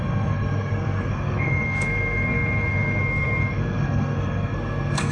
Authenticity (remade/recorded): remade